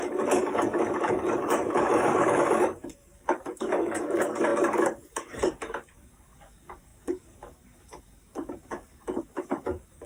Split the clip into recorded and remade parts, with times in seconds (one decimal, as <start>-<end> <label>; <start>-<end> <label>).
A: 0.0-10.1 remade